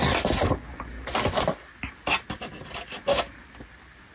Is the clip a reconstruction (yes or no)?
no